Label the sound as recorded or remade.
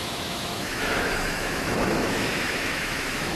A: remade